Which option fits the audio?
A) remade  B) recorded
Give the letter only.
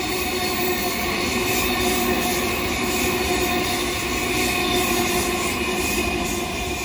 B